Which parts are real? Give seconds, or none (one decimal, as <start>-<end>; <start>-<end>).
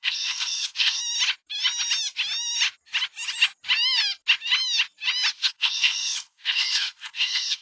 1.0-5.3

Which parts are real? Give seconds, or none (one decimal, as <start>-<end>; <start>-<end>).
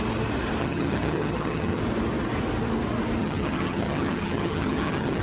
0.0-0.6; 1.8-3.2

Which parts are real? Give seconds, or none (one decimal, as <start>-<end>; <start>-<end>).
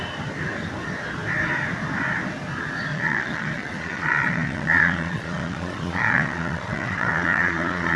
0.0-2.9